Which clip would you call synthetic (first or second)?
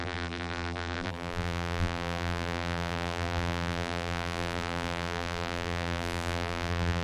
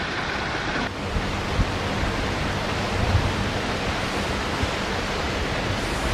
first